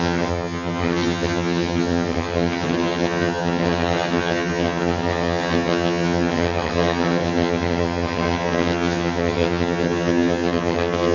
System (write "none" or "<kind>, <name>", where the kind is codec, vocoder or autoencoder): vocoder, HiFi-GAN